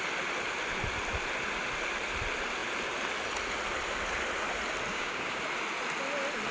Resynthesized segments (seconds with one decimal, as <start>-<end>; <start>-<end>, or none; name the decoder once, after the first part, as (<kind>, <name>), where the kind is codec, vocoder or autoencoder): 4.9-5.4 (codec, DAC)